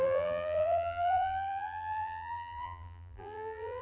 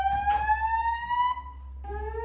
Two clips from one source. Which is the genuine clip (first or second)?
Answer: second